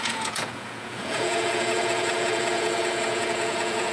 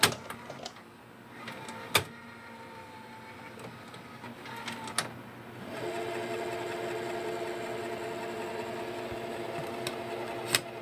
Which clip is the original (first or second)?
second